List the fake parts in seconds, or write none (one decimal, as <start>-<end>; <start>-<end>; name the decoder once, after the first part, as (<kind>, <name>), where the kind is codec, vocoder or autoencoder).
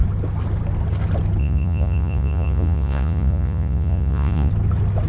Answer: 1.4-4.5 (vocoder, Vocos)